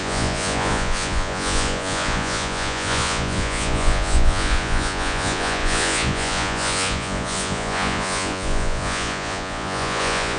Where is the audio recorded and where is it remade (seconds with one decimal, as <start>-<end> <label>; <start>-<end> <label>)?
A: 0.0-10.4 remade